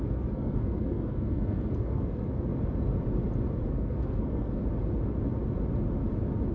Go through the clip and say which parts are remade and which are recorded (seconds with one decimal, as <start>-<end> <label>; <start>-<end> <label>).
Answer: 0.0-2.5 remade; 2.5-3.7 recorded; 3.7-4.6 remade; 4.6-6.5 recorded

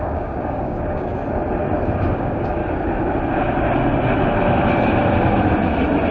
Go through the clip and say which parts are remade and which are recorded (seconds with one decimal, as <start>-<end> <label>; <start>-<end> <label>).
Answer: 0.0-1.2 remade; 1.2-2.1 recorded; 2.1-2.6 remade; 2.6-6.1 recorded

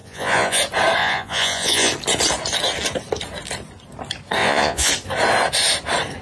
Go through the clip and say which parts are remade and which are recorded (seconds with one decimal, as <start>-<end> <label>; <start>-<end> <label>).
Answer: 0.0-0.6 remade; 0.6-1.0 recorded; 1.0-1.9 remade; 1.9-4.4 recorded; 4.4-4.9 remade; 4.9-6.2 recorded

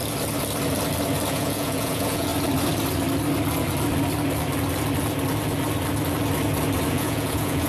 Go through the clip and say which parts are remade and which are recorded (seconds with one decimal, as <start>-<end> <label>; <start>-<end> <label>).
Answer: 0.0-1.3 recorded; 1.3-2.3 remade; 2.3-6.9 recorded; 6.9-7.7 remade

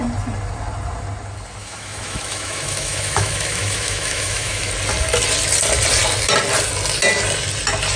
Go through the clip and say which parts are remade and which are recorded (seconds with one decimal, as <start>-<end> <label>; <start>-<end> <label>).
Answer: 0.0-1.6 recorded; 1.6-4.7 remade; 4.7-8.0 recorded

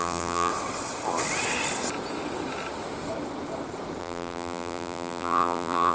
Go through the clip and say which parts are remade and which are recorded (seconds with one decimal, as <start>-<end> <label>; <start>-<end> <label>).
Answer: 0.0-0.5 remade; 0.5-4.0 recorded; 4.0-5.9 remade

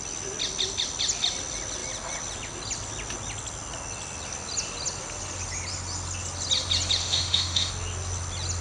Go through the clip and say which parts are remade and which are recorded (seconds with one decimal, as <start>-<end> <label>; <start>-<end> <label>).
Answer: 0.0-7.0 recorded; 7.0-7.7 remade; 7.7-8.6 recorded

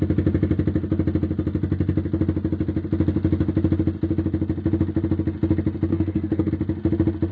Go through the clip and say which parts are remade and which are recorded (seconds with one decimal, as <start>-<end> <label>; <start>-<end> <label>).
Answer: 0.0-5.9 recorded; 5.9-6.5 remade; 6.5-7.3 recorded